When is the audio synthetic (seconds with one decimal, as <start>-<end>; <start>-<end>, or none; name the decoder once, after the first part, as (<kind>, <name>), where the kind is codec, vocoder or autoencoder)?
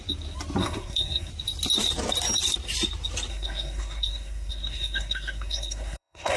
0.6-1.3 (codec, SNAC); 3.3-6.4